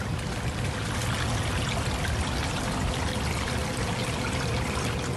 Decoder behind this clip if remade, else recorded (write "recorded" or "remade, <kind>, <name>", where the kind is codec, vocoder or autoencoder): recorded